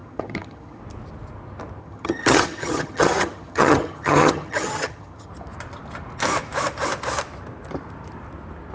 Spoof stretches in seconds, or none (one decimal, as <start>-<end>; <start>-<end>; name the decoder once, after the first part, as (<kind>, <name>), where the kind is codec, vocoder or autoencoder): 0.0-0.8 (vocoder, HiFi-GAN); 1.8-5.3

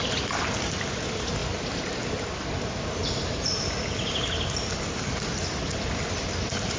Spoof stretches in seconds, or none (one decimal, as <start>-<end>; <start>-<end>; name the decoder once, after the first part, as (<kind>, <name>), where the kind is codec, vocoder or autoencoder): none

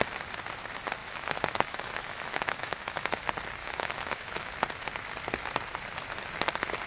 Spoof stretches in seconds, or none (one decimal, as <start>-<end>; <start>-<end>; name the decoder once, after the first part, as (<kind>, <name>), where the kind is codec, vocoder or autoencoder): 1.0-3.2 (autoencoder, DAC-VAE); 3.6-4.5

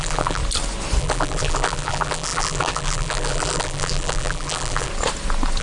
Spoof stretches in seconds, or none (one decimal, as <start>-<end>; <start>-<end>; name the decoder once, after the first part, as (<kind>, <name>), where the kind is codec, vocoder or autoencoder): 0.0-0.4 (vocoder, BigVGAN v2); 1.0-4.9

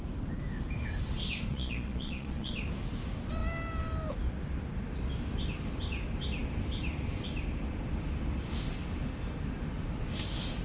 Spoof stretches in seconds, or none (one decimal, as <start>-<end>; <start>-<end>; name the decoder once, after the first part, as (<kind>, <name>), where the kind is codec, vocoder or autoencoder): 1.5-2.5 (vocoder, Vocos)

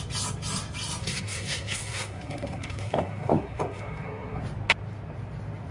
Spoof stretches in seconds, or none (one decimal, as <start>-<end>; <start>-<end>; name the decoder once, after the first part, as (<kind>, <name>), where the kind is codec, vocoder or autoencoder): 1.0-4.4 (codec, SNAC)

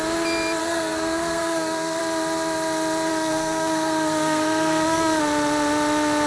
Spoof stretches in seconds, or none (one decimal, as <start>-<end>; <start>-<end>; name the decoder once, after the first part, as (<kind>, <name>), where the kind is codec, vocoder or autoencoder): 0.6-2.0 (codec, SNAC); 3.1-5.2

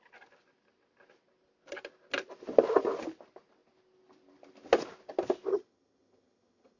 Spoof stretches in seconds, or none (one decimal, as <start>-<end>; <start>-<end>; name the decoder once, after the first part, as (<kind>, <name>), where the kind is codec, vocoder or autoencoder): 5.5-6.8 (vocoder, HiFi-GAN)